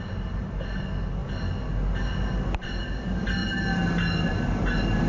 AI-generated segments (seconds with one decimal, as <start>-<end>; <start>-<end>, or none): none